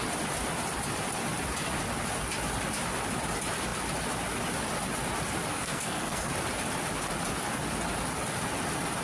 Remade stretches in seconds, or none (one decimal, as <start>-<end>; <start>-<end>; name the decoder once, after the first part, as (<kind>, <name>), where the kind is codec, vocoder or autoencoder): 5.5-6.3 (codec, SNAC)